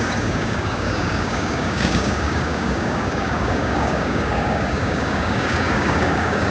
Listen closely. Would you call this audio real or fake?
fake